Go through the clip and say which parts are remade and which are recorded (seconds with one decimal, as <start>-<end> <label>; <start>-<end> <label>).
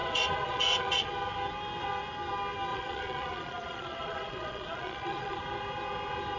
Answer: 0.0-1.1 remade; 1.1-2.7 recorded; 2.7-5.4 remade; 5.4-6.4 recorded